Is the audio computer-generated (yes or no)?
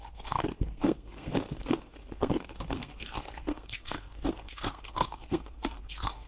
yes